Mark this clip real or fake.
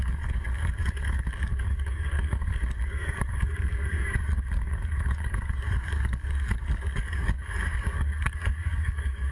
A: fake